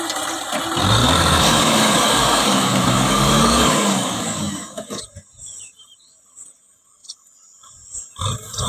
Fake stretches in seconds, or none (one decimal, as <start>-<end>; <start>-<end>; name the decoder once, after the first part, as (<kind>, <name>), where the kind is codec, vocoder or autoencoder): 1.0-5.0 (codec, DAC)